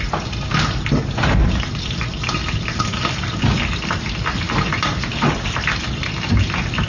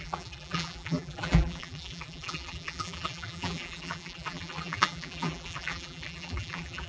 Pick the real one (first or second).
first